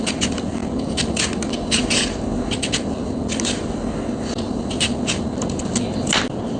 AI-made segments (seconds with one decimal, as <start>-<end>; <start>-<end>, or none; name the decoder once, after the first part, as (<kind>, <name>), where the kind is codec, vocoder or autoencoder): none